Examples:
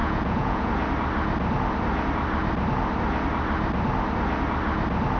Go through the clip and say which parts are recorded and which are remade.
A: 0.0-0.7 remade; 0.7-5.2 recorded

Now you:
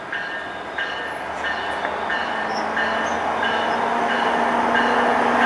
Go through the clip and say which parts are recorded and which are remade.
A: 0.0-5.5 recorded